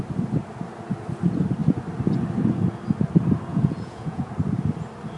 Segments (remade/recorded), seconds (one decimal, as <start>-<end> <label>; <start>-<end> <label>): 0.0-3.5 recorded; 3.5-4.3 remade; 4.3-5.2 recorded